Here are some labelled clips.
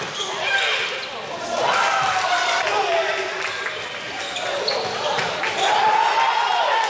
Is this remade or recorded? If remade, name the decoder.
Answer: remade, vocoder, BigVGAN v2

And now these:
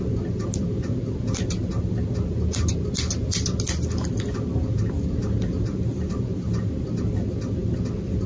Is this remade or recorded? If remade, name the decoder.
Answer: recorded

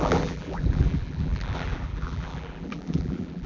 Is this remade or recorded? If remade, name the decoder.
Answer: remade, vocoder, BigVGAN v2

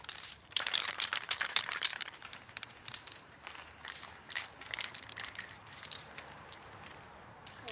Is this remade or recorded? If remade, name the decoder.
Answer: remade, vocoder, BigVGAN v2